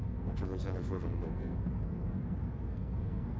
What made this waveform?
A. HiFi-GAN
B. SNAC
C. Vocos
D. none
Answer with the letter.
B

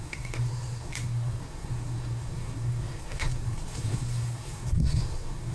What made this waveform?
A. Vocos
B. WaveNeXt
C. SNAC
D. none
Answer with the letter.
C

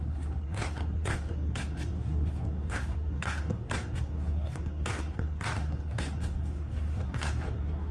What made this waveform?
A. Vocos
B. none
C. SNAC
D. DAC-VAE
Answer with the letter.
C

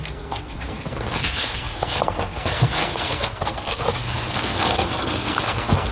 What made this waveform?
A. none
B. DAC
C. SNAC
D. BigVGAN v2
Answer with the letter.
C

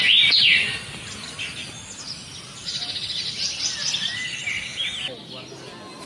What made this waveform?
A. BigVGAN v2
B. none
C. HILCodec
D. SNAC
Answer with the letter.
B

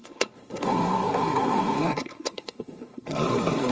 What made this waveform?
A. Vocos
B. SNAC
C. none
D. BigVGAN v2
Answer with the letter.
B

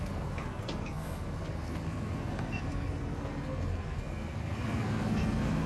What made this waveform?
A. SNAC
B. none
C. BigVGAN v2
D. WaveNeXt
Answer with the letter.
A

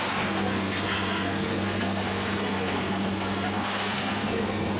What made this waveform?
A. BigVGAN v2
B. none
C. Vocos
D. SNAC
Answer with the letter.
D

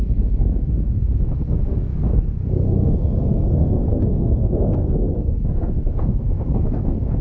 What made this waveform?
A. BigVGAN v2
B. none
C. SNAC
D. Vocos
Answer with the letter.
C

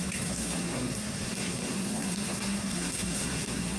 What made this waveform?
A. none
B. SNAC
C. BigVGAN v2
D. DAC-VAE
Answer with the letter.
B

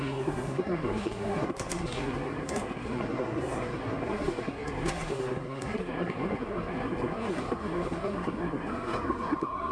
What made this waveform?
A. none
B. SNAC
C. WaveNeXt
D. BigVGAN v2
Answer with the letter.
B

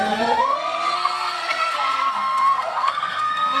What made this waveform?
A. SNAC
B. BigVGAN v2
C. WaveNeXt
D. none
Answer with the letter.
A